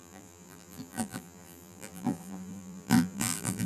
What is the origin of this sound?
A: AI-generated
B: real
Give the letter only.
A